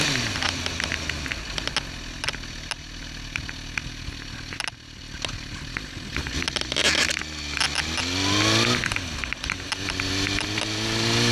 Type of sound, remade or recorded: recorded